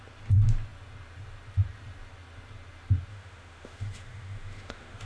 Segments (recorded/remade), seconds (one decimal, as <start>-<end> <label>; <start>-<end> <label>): 0.0-3.1 recorded; 3.1-5.1 remade